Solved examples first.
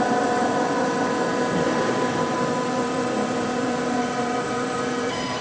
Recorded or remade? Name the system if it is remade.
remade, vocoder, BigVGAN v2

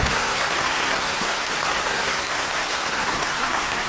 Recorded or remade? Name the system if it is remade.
remade, codec, SNAC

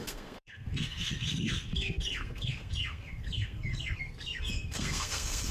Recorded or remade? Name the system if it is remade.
remade, codec, SNAC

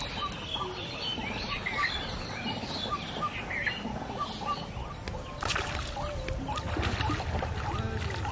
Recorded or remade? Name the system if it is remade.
recorded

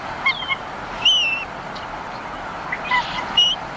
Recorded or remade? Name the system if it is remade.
recorded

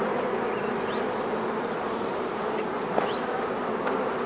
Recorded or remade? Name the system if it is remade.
recorded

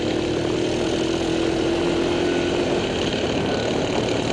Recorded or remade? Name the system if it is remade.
recorded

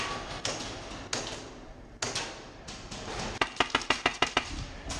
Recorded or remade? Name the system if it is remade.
recorded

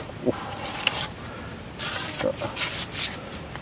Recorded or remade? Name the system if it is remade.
recorded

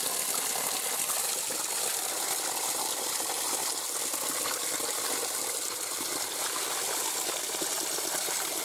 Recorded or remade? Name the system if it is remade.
recorded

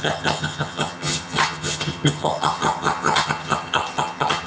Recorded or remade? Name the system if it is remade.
remade, vocoder, HiFi-GAN